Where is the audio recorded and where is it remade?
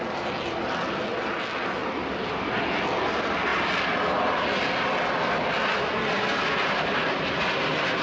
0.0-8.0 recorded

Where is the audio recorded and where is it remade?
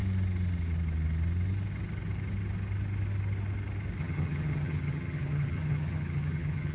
0.0-4.0 recorded; 4.0-6.7 remade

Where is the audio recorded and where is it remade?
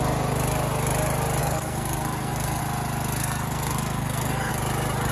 0.0-1.4 recorded; 1.4-2.6 remade; 2.6-3.2 recorded; 3.2-4.6 remade; 4.6-5.1 recorded